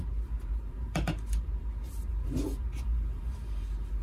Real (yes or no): no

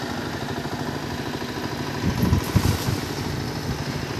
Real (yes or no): yes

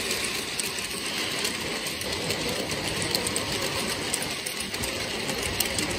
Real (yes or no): yes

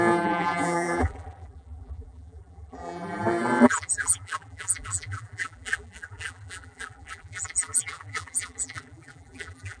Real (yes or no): no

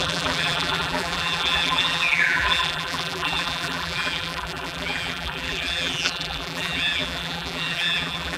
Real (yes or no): no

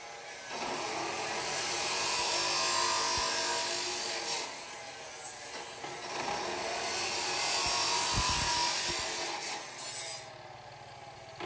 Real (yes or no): yes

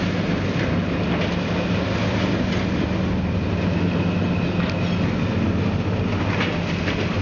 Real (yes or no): yes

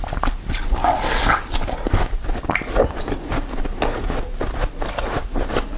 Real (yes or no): yes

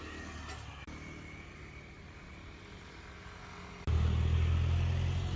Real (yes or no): yes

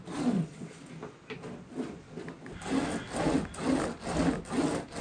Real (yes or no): yes